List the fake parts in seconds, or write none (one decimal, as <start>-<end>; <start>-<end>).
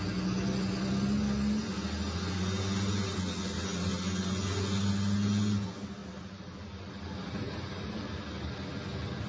6.0-8.6